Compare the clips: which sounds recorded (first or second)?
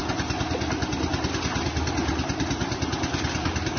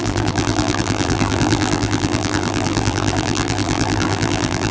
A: first